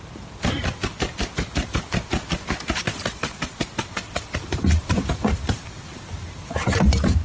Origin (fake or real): fake